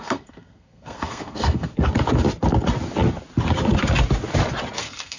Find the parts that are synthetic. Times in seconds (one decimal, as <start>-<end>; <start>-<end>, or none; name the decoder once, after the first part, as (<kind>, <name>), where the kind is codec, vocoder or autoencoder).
0.0-1.7 (codec, SNAC); 4.8-5.2